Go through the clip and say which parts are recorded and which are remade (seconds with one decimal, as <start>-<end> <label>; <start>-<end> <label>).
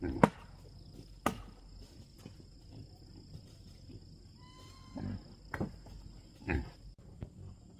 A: 0.0-7.8 recorded